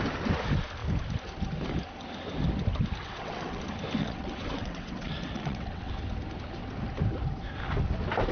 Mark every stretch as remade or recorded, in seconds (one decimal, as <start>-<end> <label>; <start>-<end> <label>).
0.0-3.0 recorded; 3.0-3.6 remade; 3.6-4.0 recorded; 4.0-5.9 remade; 5.9-8.3 recorded

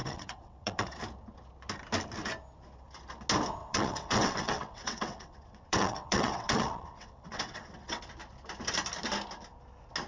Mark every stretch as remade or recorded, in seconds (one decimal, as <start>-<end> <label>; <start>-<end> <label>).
0.0-1.0 remade; 1.0-3.6 recorded; 3.6-8.0 remade; 8.0-10.1 recorded

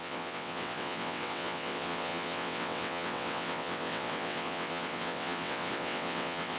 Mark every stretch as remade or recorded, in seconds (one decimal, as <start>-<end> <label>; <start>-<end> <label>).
0.0-6.6 remade

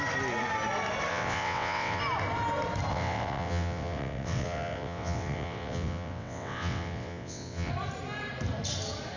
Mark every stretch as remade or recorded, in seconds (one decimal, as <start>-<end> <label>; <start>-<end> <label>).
0.0-1.1 recorded; 1.1-2.0 remade; 2.0-2.9 recorded; 2.9-7.7 remade; 7.7-9.2 recorded

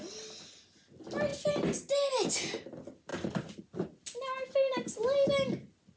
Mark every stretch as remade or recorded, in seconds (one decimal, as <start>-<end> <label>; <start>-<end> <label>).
0.0-6.0 recorded